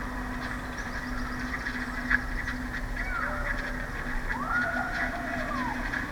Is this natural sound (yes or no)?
yes